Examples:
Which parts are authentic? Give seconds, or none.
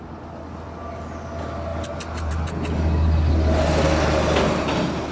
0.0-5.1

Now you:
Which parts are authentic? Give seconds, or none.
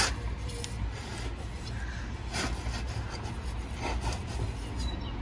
0.0-5.2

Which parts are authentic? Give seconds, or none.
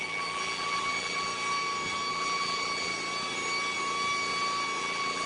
1.3-2.1; 2.9-4.8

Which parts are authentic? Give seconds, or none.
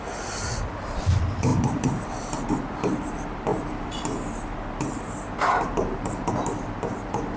0.0-7.4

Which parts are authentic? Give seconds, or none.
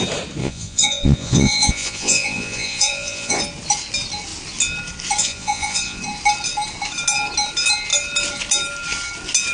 0.0-0.4; 3.4-5.2; 6.0-9.5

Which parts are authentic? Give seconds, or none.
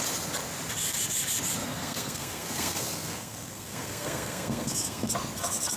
0.0-1.6; 5.1-5.8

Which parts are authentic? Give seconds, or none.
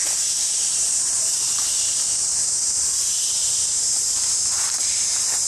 0.0-0.8; 1.5-3.4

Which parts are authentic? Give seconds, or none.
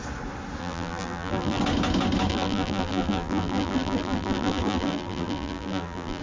0.0-0.6; 1.6-2.3